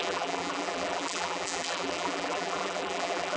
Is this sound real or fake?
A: fake